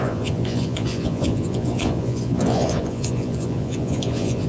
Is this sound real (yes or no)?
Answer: no